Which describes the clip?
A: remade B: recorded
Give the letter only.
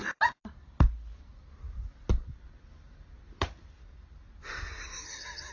B